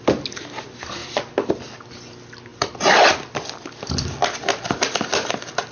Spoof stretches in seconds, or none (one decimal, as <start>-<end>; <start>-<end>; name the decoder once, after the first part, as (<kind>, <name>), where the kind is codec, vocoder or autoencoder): 1.0-1.5 (vocoder, BigVGAN v2); 2.5-5.7